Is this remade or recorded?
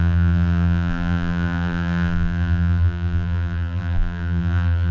remade